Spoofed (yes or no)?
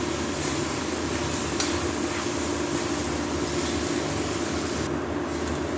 no